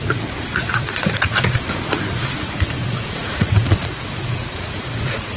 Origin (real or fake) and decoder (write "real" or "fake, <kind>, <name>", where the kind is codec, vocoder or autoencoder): fake, vocoder, Vocos